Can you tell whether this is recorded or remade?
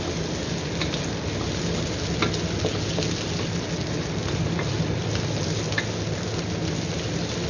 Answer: recorded